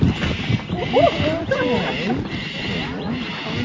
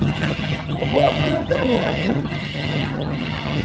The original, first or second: first